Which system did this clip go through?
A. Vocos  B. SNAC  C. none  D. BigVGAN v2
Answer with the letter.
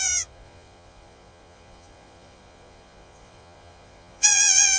A